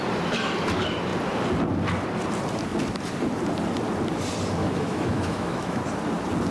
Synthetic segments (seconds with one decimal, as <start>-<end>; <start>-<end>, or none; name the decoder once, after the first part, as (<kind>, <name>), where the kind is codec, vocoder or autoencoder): 4.6-5.8 (autoencoder, DAC-VAE)